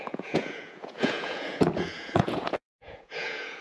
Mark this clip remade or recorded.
remade